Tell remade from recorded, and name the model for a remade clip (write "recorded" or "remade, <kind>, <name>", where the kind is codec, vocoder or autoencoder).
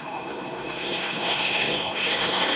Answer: remade, codec, SNAC